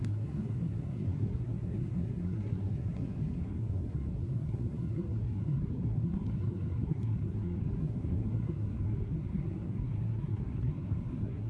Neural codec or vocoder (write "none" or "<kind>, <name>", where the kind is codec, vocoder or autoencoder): codec, SNAC